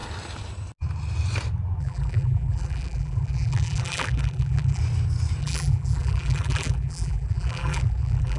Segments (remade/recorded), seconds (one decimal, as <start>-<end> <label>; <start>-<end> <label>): 0.0-1.8 recorded; 1.8-4.8 remade; 4.8-5.4 recorded; 5.4-8.4 remade

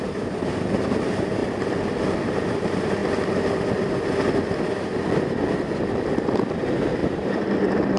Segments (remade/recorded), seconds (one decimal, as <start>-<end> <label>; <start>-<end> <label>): 0.0-1.4 remade; 1.4-2.2 recorded; 2.2-3.0 remade; 3.0-6.5 recorded; 6.5-8.0 remade

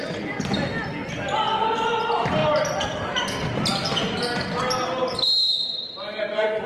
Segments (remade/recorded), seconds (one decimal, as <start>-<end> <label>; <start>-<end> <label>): 0.0-1.0 remade; 1.0-1.6 recorded; 1.6-6.7 remade

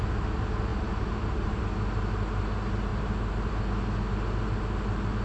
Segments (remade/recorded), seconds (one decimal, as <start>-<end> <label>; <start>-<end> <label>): 0.0-0.7 recorded; 0.7-1.6 remade; 1.6-5.2 recorded